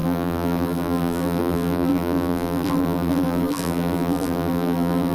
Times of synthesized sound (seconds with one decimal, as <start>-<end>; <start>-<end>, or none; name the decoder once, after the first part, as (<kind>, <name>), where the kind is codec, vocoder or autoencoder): 0.0-5.1 (vocoder, BigVGAN v2)